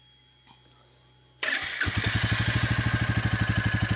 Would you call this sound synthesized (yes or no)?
no